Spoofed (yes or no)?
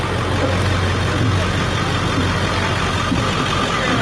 no